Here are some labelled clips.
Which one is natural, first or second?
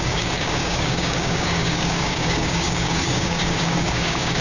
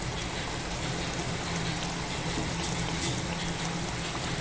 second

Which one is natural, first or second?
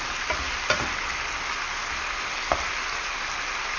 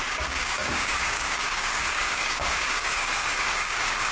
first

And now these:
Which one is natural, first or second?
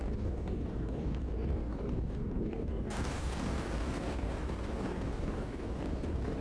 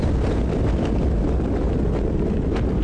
second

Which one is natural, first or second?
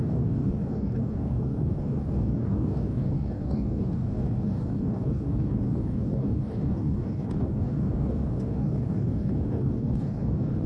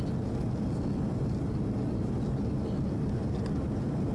second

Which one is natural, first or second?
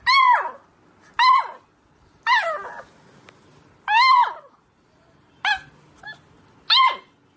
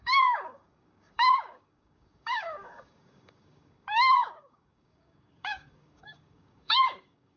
first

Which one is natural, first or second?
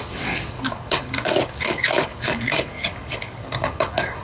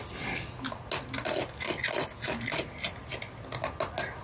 second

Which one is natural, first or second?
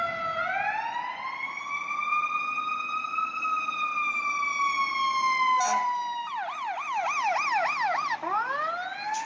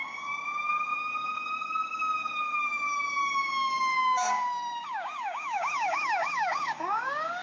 first